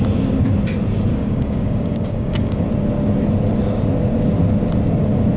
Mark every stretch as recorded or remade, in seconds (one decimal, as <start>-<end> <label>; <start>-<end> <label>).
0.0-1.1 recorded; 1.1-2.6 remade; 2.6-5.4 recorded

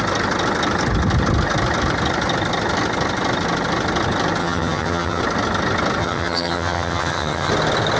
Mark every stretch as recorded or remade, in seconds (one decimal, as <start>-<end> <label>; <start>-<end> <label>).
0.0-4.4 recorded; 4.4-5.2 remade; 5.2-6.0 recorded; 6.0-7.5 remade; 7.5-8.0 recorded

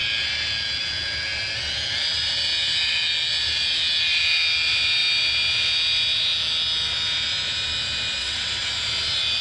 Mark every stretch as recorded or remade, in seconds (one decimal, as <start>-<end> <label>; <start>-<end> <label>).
0.0-8.2 recorded; 8.2-8.7 remade; 8.7-9.4 recorded

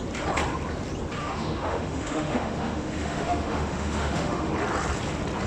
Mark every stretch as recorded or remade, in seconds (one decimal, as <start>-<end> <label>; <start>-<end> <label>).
0.0-1.2 recorded; 1.2-4.5 remade; 4.5-5.5 recorded

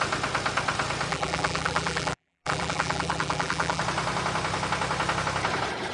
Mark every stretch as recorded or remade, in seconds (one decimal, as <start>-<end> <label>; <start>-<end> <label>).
0.0-1.1 recorded; 1.1-3.8 remade; 3.8-5.9 recorded

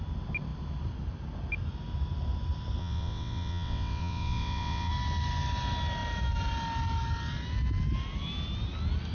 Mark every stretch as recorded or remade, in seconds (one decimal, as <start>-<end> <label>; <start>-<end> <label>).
0.0-2.8 recorded; 2.8-4.9 remade; 4.9-9.1 recorded